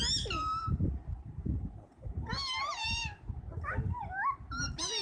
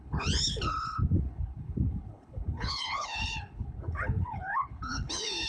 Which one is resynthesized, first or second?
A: second